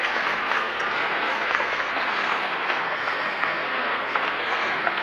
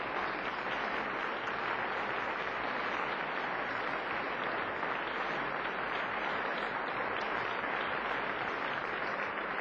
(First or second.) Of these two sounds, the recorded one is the second